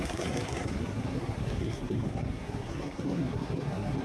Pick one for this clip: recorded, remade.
remade